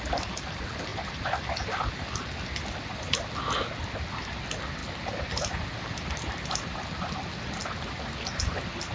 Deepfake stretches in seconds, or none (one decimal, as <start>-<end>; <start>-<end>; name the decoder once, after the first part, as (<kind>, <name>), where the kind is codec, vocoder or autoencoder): none